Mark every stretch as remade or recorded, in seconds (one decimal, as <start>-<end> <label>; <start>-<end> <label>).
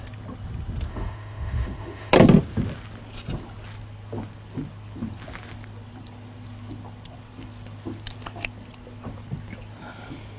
0.0-0.9 recorded; 0.9-2.1 remade; 2.1-10.4 recorded